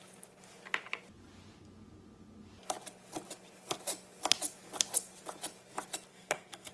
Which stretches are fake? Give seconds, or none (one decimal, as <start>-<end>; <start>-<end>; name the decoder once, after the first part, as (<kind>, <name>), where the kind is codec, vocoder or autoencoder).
6.1-6.7 (codec, SNAC)